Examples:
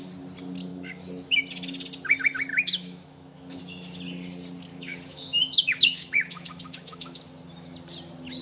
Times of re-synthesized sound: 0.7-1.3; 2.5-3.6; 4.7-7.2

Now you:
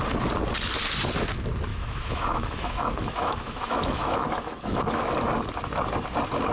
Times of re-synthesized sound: 1.7-5.1

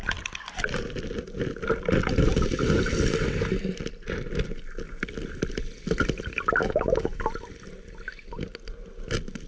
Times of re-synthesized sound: 6.6-7.2

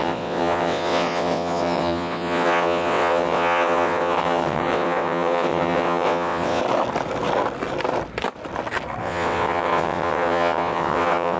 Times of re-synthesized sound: 0.0-6.6; 9.0-11.4

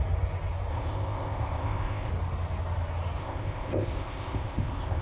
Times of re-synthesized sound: 0.7-2.1; 3.2-5.0

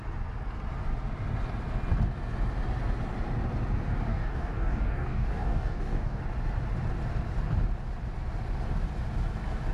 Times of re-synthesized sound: 4.1-6.2

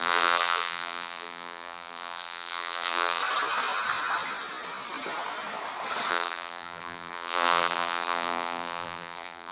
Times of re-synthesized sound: 0.0-3.2; 6.1-9.5